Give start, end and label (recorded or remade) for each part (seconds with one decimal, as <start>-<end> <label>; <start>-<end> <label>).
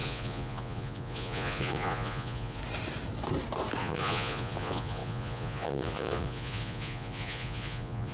0.0-2.6 remade; 2.6-3.8 recorded; 3.8-8.1 remade